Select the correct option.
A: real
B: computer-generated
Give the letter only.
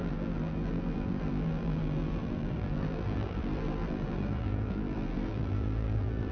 B